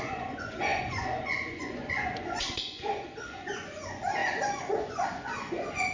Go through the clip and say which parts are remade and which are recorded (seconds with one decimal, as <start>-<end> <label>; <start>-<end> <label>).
0.0-5.9 remade